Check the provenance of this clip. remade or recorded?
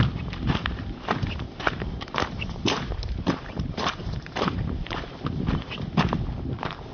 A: remade